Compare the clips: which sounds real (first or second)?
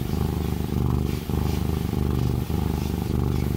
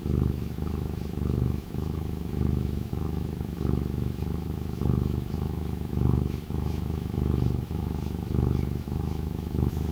first